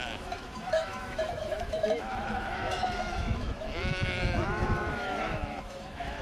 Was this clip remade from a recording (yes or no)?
yes